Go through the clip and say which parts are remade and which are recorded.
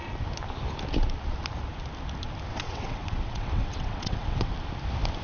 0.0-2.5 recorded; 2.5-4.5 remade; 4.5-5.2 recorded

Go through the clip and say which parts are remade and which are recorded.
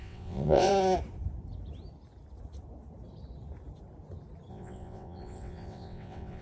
0.0-0.7 remade; 0.7-4.5 recorded; 4.5-6.4 remade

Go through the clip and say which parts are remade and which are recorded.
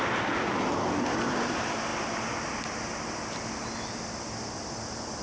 0.0-5.2 recorded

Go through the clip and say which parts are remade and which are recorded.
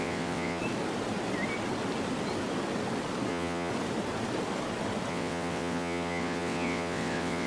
0.0-0.6 remade; 0.6-3.3 recorded; 3.3-3.7 remade; 3.7-5.1 recorded; 5.1-7.5 remade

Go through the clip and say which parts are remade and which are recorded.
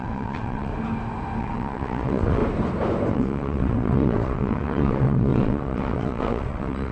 0.0-0.7 remade; 0.7-1.4 recorded; 1.4-2.4 remade; 2.4-3.1 recorded; 3.1-6.9 remade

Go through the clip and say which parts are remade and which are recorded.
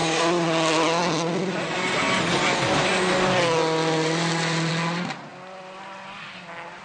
0.0-6.8 recorded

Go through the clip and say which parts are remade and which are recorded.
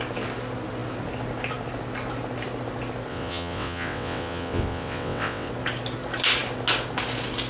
0.0-3.1 recorded; 3.1-5.5 remade; 5.5-7.5 recorded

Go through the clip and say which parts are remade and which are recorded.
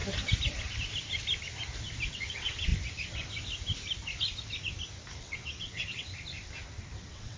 0.0-2.1 recorded; 2.1-2.7 remade; 2.7-5.2 recorded; 5.2-6.1 remade; 6.1-7.0 recorded; 7.0-7.4 remade